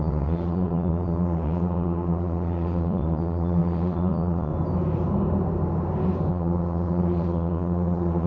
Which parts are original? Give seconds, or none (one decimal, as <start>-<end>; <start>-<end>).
4.5-6.3